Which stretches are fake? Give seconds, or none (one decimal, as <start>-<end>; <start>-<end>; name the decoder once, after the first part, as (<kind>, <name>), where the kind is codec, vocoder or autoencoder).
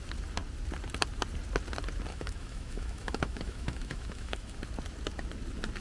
2.1-4.6 (autoencoder, DAC-VAE)